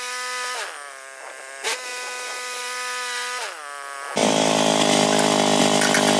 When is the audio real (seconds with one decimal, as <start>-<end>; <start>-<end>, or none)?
0.0-6.2

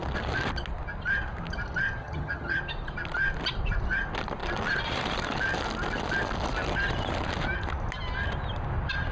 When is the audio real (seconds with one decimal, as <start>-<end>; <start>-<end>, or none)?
0.0-2.0; 2.6-9.1

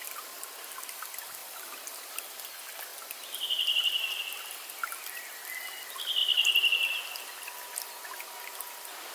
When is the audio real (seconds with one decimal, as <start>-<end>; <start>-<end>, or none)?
1.4-2.2; 2.9-4.4; 6.2-6.9

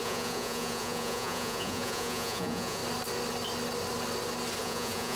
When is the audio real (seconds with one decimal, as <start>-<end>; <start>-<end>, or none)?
2.8-4.6

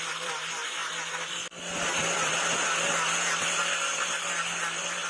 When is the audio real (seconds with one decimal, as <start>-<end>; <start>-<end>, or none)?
0.0-5.1

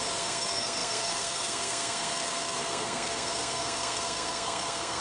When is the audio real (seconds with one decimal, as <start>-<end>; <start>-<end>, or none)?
none

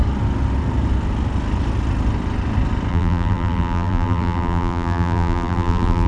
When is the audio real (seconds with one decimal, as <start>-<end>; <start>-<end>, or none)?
0.0-2.9

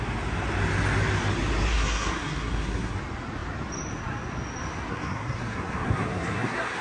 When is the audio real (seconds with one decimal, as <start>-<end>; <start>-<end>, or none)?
0.0-1.7; 3.0-4.9